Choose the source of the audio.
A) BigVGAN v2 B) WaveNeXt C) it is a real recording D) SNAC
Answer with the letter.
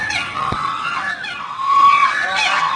B